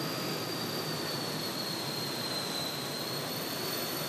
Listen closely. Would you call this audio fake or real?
real